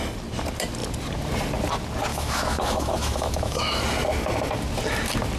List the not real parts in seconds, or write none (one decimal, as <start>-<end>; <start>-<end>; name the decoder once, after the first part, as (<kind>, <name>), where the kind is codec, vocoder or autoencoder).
2.1-3.8 (autoencoder, DAC-VAE)